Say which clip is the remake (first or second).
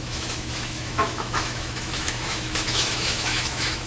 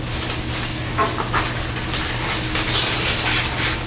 first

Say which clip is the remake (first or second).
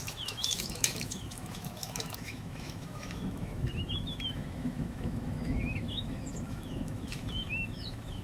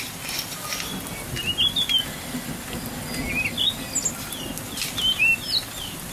first